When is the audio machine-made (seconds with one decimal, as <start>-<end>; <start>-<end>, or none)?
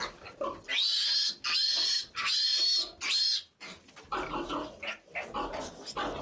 none